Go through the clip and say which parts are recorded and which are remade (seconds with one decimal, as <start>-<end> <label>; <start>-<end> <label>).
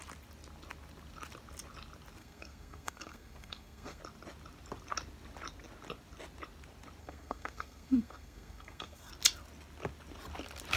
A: 0.0-2.2 recorded; 2.2-4.0 remade; 4.0-7.0 recorded; 7.0-9.1 remade; 9.1-10.8 recorded